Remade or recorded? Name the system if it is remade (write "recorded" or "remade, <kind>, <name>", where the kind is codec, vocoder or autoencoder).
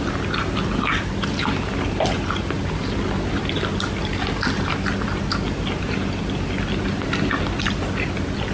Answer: recorded